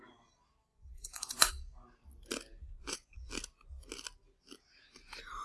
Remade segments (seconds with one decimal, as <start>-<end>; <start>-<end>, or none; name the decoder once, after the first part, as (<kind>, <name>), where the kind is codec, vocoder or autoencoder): 0.7-1.5 (vocoder, Vocos); 2.5-3.3